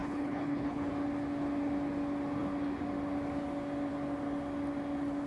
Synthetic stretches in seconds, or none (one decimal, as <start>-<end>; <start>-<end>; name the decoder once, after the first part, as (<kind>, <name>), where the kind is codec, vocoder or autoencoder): 0.0-0.9 (codec, HILCodec)